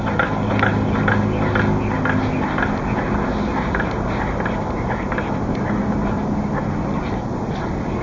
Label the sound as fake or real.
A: real